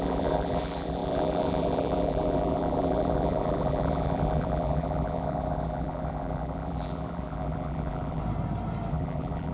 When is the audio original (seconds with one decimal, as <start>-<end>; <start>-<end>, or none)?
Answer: 8.2-8.9